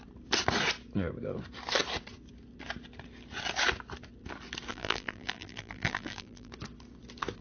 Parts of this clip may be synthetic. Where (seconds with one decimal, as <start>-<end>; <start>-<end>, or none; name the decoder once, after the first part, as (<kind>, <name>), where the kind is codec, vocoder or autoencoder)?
4.7-6.5 (vocoder, BigVGAN v2)